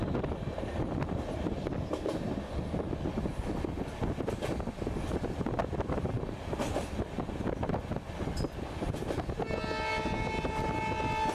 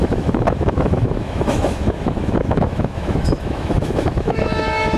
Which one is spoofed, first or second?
second